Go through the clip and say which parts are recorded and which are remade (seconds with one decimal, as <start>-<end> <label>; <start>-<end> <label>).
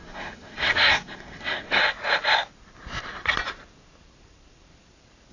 0.0-1.8 remade; 1.8-5.3 recorded